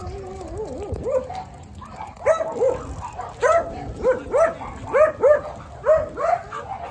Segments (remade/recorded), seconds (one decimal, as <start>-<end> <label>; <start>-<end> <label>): 0.0-6.9 recorded

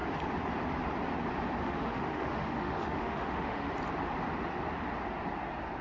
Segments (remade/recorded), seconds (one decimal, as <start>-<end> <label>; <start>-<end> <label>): 0.0-1.6 recorded; 1.6-3.7 remade; 3.7-5.8 recorded